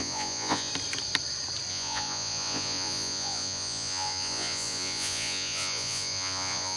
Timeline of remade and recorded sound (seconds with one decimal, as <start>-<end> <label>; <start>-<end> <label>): 0.0-0.7 remade; 0.7-1.7 recorded; 1.7-6.8 remade